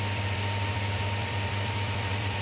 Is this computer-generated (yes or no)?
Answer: yes